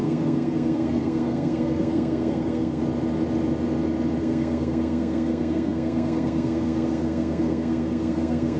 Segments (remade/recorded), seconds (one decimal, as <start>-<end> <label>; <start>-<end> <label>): 0.0-2.8 remade; 2.8-4.2 recorded; 4.2-8.6 remade